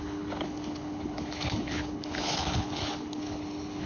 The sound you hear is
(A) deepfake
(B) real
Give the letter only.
A